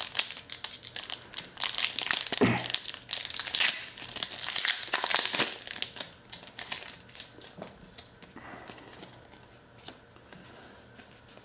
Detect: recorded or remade recorded